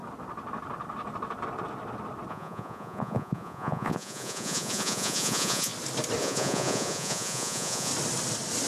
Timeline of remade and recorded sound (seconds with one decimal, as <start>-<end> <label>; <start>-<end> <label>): 0.0-2.3 recorded; 2.3-5.7 remade; 5.7-6.2 recorded; 6.2-7.9 remade; 7.9-8.7 recorded